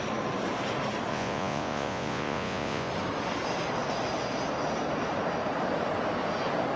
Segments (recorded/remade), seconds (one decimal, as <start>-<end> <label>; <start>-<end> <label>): 0.0-1.1 recorded; 1.1-2.9 remade; 2.9-6.8 recorded